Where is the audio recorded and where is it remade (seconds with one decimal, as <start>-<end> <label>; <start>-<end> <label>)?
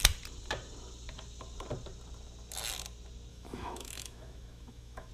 0.0-3.3 recorded; 3.3-5.1 remade